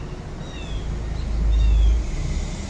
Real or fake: real